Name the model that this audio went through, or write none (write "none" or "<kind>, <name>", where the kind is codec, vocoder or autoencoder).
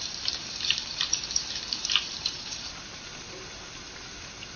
vocoder, BigVGAN v2